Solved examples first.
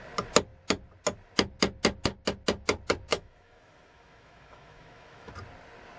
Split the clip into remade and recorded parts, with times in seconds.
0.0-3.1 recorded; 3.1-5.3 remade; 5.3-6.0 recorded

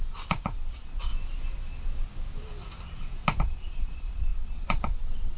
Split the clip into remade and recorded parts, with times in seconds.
0.0-1.1 remade; 1.1-3.4 recorded; 3.4-5.4 remade

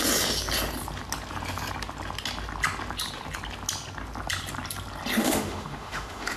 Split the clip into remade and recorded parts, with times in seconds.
0.0-5.2 recorded; 5.2-6.4 remade

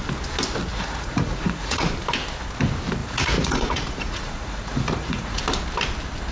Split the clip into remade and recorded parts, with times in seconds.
0.0-0.7 recorded; 0.7-1.9 remade; 1.9-3.0 recorded; 3.0-5.4 remade; 5.4-6.3 recorded

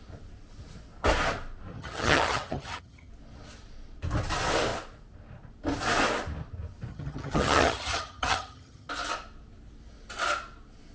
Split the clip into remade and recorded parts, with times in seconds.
0.0-1.7 recorded; 1.7-3.1 remade; 3.1-6.9 recorded; 6.9-8.9 remade; 8.9-10.9 recorded

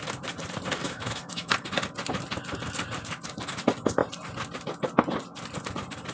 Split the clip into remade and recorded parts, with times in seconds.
0.0-0.8 recorded; 0.8-1.5 remade; 1.5-6.1 recorded

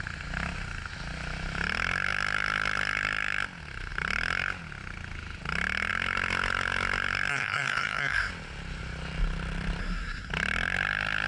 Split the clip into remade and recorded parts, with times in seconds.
0.0-7.3 recorded; 7.3-8.3 remade; 8.3-9.8 recorded; 9.8-10.3 remade; 10.3-11.3 recorded